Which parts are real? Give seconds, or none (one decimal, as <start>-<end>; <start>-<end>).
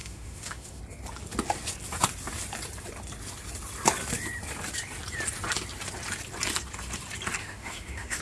0.8-7.4